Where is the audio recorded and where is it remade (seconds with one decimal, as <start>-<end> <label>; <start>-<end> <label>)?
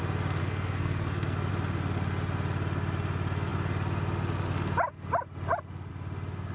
0.0-0.4 recorded; 0.4-1.5 remade; 1.5-6.5 recorded